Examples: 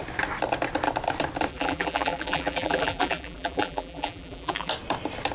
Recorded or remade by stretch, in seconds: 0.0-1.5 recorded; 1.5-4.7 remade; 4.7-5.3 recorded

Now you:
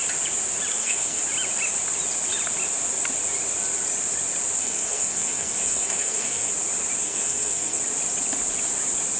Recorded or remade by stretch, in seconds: 0.0-0.7 recorded; 0.7-1.2 remade; 1.2-4.6 recorded; 4.6-6.5 remade; 6.5-7.0 recorded; 7.0-7.8 remade; 7.8-9.2 recorded

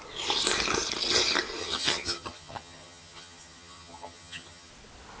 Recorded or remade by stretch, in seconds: 0.0-1.6 recorded; 1.6-4.7 remade; 4.7-5.2 recorded